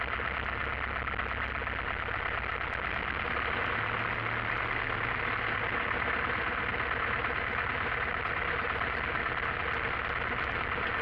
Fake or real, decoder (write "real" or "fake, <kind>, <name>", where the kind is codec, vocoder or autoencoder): real